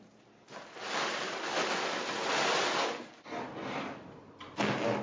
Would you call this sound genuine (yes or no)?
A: yes